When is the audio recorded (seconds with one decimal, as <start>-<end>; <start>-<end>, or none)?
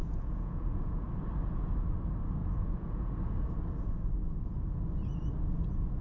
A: 1.1-2.4; 3.3-6.0